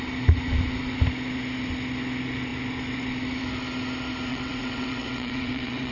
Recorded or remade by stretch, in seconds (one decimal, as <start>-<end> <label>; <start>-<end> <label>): 0.0-4.3 recorded; 4.3-5.9 remade